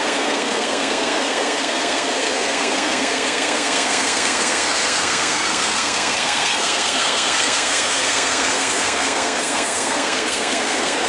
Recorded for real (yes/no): no